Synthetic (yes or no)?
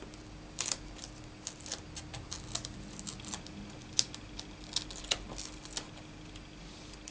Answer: no